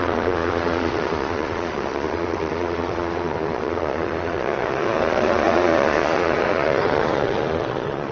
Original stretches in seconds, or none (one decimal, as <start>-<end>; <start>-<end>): none